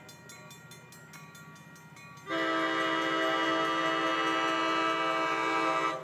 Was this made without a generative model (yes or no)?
yes